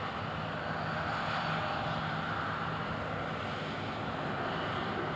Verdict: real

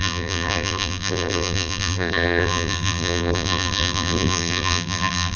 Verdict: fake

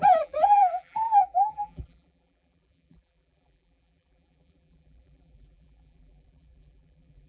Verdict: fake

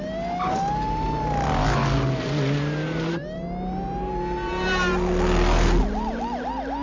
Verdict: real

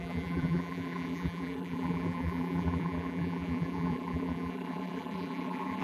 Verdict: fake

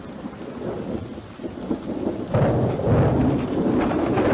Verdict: real